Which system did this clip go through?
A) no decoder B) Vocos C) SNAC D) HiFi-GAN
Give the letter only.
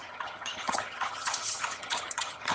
D